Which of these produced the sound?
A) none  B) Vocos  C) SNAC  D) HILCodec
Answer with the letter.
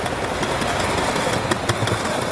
A